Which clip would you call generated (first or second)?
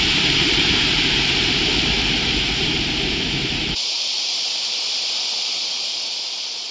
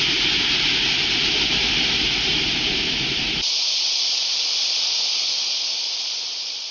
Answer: first